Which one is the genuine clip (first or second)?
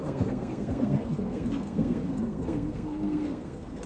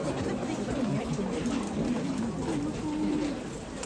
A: second